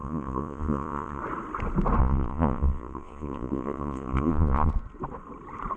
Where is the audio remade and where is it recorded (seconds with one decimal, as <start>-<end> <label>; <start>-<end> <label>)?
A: 0.0-1.2 remade; 1.2-2.0 recorded; 2.0-4.7 remade; 4.7-5.8 recorded